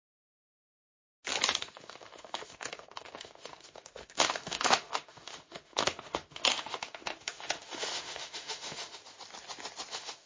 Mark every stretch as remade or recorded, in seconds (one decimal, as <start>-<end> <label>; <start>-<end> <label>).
0.0-0.5 remade; 0.5-1.6 recorded; 1.6-9.0 remade; 9.0-9.9 recorded; 9.9-10.3 remade